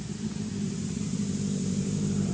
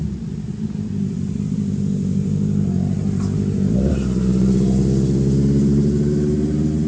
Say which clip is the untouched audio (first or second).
second